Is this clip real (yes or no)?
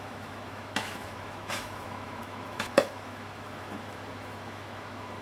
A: no